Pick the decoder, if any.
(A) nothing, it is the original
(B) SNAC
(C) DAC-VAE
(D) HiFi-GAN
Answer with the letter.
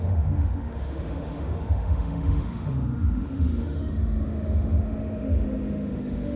C